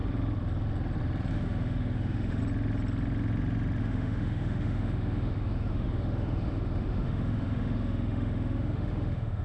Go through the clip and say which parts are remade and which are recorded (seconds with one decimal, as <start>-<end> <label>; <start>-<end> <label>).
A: 0.0-1.3 recorded; 1.3-2.4 remade; 2.4-3.8 recorded; 3.8-9.4 remade